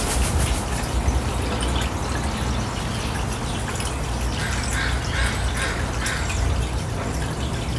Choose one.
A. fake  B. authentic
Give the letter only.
B